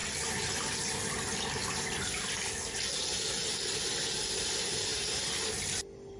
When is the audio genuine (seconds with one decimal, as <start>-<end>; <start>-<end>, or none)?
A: 0.0-4.9; 5.8-6.2